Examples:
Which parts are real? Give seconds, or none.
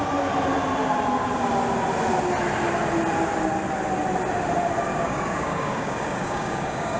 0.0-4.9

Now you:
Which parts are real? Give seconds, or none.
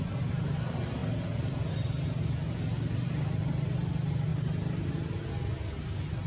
0.0-6.3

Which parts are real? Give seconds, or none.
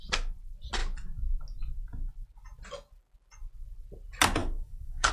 0.0-4.4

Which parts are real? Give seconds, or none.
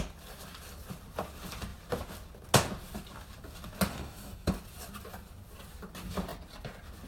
0.0-3.9; 4.5-7.1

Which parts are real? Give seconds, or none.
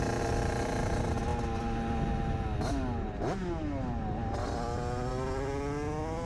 0.0-6.3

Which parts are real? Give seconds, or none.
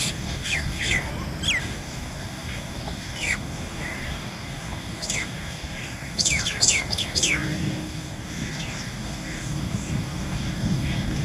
1.1-1.6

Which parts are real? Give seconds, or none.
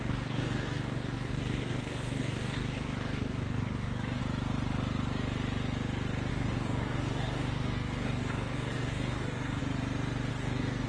4.2-6.3; 9.6-10.3